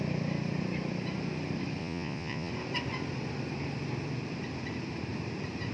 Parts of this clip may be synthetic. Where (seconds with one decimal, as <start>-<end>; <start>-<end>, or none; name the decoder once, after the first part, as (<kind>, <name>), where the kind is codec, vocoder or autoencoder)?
1.8-2.5 (vocoder, Vocos)